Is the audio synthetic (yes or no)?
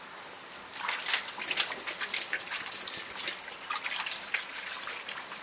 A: no